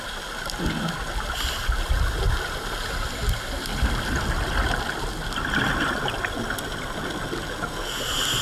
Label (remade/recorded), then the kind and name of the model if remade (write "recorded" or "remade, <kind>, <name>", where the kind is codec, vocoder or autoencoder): recorded